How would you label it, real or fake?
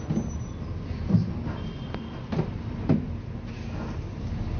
real